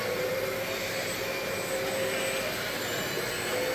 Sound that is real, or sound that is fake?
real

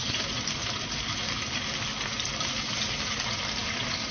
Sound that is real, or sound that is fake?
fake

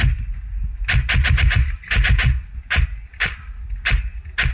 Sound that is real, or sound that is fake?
real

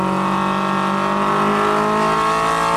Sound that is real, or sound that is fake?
real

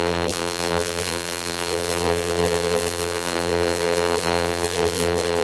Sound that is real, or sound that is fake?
fake